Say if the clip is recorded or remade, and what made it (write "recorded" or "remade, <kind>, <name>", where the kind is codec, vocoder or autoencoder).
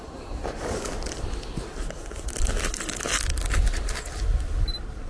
recorded